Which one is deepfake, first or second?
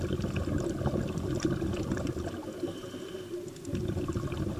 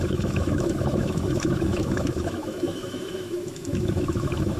second